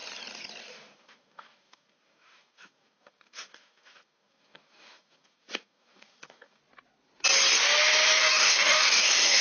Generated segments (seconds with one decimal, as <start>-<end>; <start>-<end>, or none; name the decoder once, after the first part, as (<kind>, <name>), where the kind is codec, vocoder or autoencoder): 0.7-6.6 (codec, DAC); 8.2-9.4